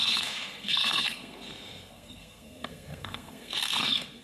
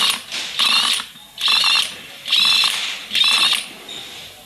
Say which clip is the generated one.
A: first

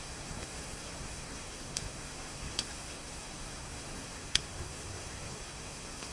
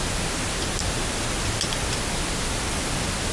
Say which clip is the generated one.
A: first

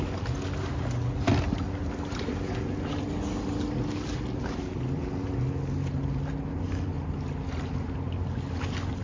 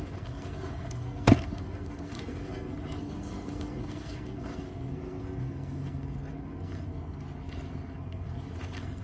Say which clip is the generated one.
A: second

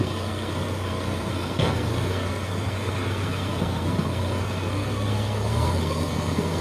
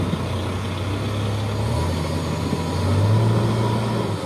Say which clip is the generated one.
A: first